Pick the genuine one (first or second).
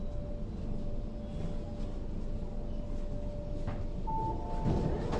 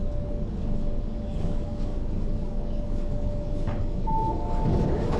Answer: first